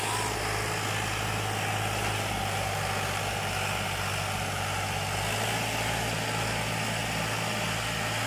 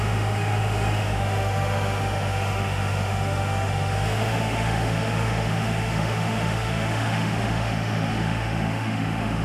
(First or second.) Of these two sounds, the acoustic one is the first